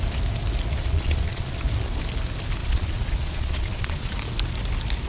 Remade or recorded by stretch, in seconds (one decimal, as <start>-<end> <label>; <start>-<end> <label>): 0.0-0.8 recorded; 0.8-1.6 remade; 1.6-2.6 recorded; 2.6-4.1 remade; 4.1-5.1 recorded